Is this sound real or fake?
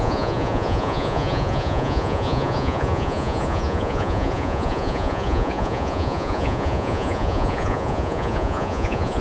fake